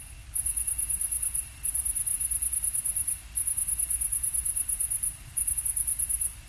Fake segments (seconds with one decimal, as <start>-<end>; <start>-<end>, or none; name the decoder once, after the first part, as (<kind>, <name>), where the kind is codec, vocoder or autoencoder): none